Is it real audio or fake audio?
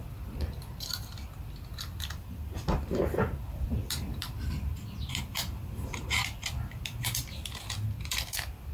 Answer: fake